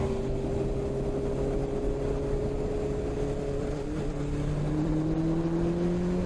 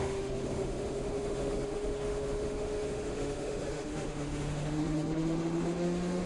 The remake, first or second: second